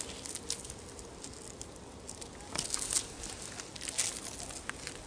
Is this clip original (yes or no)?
yes